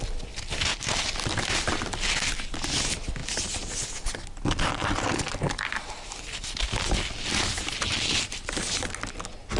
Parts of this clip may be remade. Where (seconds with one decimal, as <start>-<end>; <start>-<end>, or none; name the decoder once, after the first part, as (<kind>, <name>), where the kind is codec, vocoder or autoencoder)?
none